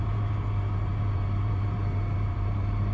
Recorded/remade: remade